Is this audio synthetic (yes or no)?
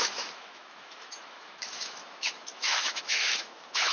yes